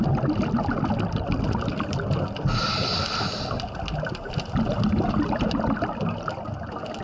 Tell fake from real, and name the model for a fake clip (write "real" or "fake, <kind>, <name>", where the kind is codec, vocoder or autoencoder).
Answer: real